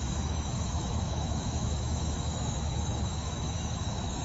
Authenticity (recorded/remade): remade